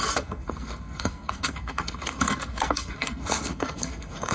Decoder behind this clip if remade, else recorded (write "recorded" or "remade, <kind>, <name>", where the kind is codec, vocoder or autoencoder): remade, codec, SNAC